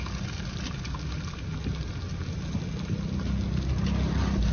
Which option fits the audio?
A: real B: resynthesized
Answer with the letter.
A